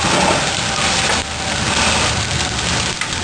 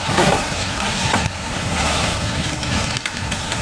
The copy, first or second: second